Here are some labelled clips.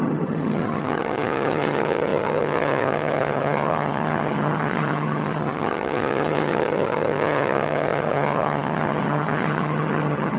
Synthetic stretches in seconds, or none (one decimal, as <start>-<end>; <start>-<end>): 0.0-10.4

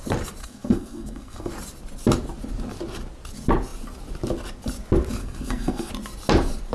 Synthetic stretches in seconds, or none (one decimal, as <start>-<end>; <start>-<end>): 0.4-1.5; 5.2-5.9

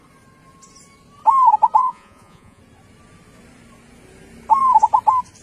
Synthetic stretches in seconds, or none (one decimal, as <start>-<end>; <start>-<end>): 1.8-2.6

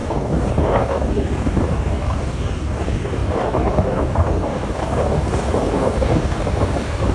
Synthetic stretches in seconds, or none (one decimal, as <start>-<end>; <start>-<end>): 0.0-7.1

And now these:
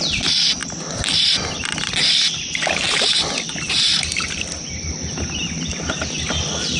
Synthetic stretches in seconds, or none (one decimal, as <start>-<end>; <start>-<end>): none

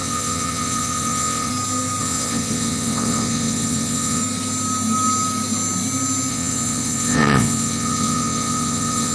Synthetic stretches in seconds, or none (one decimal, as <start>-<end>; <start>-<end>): 0.0-1.5; 2.0-4.2; 6.3-9.1

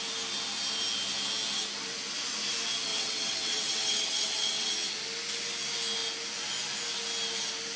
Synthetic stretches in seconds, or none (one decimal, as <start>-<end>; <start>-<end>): 2.9-4.7

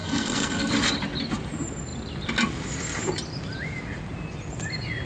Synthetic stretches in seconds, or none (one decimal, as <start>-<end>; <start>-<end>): 0.0-0.7